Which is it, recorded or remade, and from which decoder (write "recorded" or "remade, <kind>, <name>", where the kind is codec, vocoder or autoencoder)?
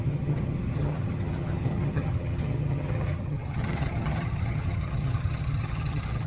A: remade, vocoder, HiFi-GAN